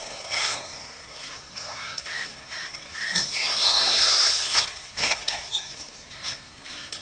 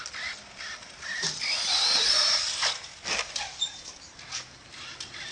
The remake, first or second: first